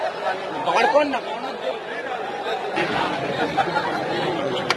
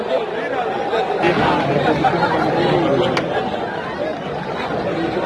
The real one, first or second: second